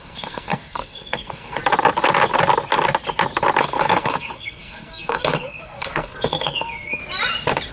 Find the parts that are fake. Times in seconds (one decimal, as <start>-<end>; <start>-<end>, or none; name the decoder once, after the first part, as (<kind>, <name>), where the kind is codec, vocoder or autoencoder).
0.0-1.6 (codec, SNAC); 3.6-7.0